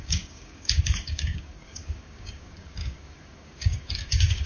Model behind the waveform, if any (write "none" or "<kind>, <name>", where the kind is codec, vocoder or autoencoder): codec, DAC